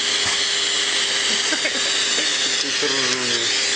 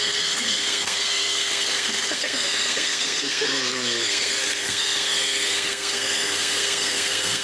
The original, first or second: first